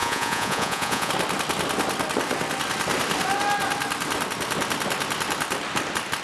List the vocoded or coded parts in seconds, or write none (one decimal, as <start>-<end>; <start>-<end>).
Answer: 0.0-1.1